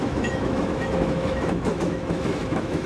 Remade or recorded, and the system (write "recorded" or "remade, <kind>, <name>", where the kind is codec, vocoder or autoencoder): remade, autoencoder, DAC-VAE